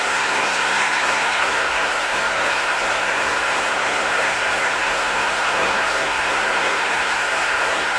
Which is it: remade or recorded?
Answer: remade